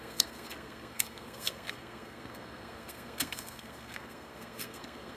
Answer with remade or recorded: remade